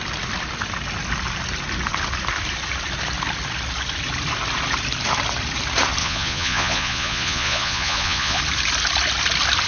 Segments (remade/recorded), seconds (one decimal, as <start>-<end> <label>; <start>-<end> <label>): 0.0-6.0 recorded; 6.0-8.4 remade; 8.4-9.7 recorded